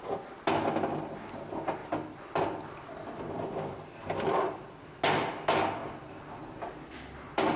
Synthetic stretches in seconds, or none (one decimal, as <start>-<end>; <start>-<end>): 1.8-4.8